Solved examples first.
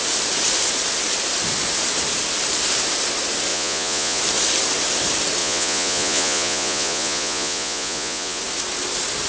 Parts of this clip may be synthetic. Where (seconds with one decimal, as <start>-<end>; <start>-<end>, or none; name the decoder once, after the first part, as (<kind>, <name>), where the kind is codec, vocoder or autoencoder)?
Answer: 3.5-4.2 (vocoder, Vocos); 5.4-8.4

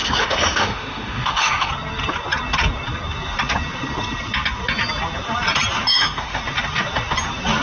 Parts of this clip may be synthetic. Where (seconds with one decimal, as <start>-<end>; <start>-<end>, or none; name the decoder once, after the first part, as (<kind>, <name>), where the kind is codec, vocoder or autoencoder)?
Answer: 0.0-1.7 (autoencoder, DAC-VAE); 5.9-6.4

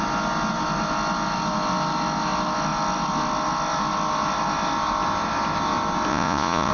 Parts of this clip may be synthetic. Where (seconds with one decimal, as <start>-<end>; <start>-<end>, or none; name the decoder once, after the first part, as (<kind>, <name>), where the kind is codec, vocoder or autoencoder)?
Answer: 6.1-6.7 (vocoder, Vocos)